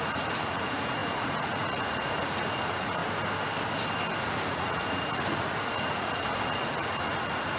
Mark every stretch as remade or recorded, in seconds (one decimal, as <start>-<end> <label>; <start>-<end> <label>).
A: 0.0-3.0 remade; 3.0-4.2 recorded; 4.2-7.6 remade